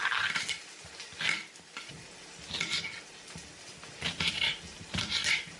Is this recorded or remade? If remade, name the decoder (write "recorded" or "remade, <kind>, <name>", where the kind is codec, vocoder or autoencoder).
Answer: recorded